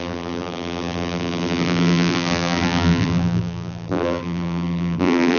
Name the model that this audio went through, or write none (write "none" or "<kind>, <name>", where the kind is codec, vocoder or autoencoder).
vocoder, BigVGAN v2